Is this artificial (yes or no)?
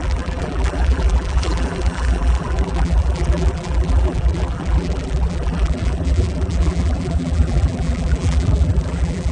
yes